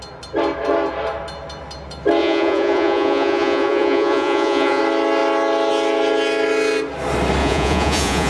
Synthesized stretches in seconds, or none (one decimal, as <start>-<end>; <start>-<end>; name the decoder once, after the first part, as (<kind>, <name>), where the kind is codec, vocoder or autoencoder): 2.2-4.8 (vocoder, Vocos); 7.4-8.3